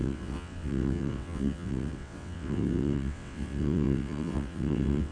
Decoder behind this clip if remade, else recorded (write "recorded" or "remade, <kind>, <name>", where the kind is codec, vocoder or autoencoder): remade, vocoder, WaveNeXt